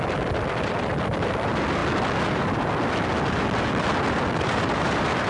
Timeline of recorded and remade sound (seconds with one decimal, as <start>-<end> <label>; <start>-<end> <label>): 0.0-1.8 remade; 1.8-4.1 recorded; 4.1-5.3 remade